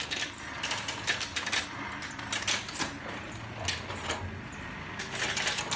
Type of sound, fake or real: real